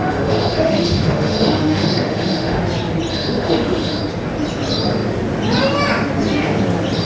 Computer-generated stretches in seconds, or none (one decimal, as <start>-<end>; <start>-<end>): 0.0-2.6; 3.1-4.0